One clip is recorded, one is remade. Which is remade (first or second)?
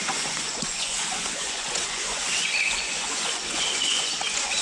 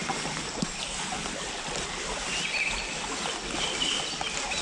first